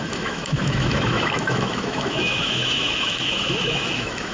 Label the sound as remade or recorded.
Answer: remade